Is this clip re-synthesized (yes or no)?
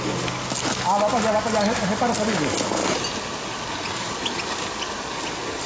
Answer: no